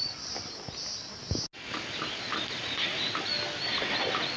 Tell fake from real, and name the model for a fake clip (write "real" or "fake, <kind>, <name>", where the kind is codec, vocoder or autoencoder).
real